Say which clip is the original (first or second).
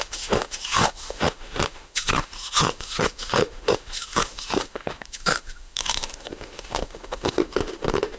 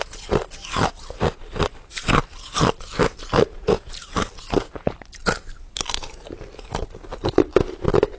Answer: second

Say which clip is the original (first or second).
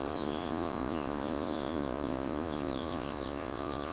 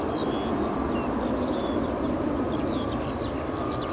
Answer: second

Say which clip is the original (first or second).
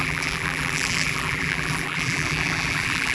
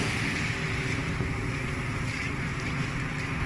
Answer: second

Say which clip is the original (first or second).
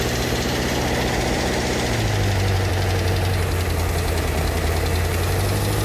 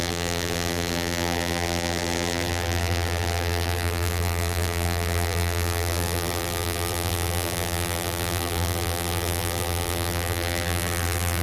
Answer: first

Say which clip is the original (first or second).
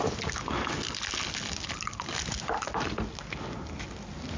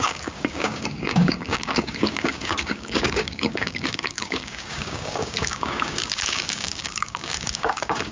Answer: first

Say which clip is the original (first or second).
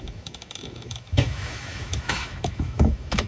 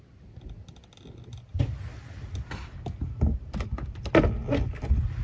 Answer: second